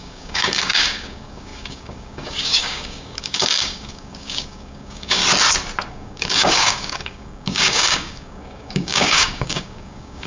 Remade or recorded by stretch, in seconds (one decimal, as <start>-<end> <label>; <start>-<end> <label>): 0.0-5.2 remade; 5.2-5.9 recorded; 5.9-10.3 remade